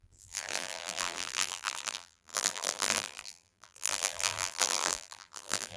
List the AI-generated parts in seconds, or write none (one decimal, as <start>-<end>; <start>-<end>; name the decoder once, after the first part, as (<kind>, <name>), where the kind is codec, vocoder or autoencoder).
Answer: 0.0-5.8 (vocoder, BigVGAN v2)